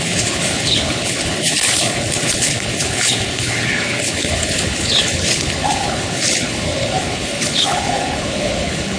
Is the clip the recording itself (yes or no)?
no